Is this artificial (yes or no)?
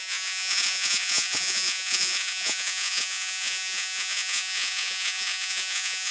yes